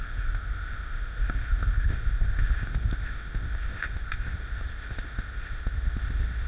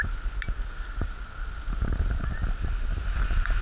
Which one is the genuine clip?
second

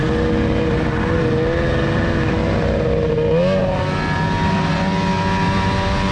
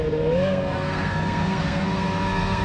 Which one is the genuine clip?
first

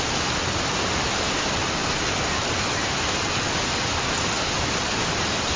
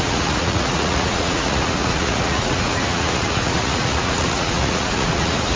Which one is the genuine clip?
first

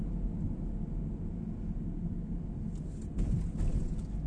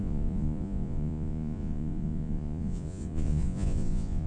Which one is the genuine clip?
first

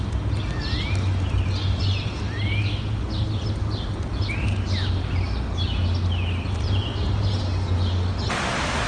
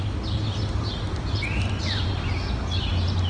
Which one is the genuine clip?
first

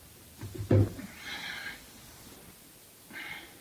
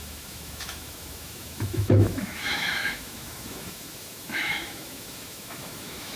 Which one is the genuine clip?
first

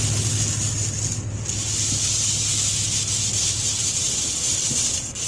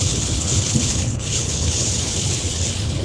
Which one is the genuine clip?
first